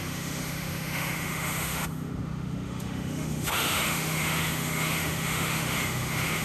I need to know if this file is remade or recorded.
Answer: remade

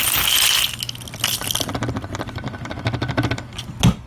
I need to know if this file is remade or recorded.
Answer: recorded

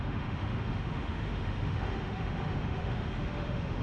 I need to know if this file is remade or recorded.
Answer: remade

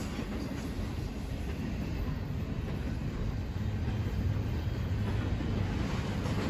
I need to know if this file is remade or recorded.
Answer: recorded